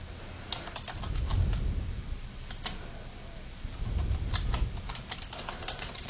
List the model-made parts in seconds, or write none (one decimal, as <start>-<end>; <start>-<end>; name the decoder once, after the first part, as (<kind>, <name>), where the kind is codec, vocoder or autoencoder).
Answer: none